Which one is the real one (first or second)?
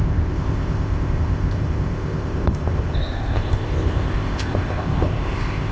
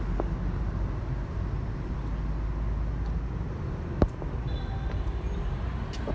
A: second